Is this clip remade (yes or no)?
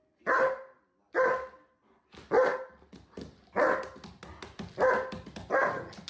no